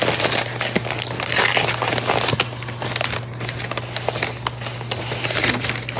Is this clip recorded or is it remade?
recorded